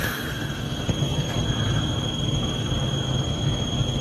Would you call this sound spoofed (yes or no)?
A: no